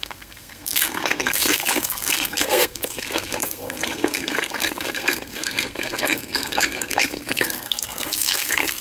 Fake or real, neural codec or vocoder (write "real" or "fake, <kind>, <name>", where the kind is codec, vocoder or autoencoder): fake, codec, SNAC